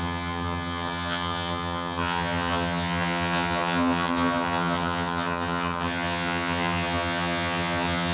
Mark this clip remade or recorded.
remade